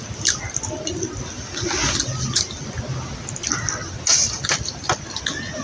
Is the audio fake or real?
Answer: real